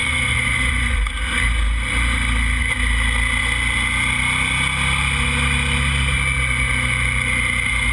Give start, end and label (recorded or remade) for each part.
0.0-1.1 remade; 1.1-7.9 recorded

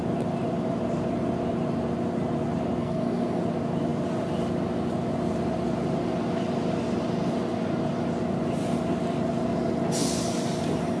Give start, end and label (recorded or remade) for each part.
0.0-2.8 recorded; 2.8-3.4 remade; 3.4-11.0 recorded

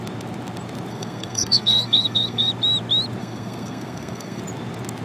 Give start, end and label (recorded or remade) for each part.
0.0-0.9 recorded; 0.9-2.5 remade; 2.5-3.2 recorded; 3.2-4.4 remade; 4.4-5.0 recorded

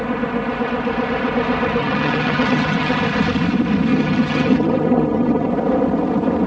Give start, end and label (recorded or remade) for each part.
0.0-1.8 recorded; 1.8-3.0 remade; 3.0-3.9 recorded; 3.9-5.5 remade; 5.5-6.5 recorded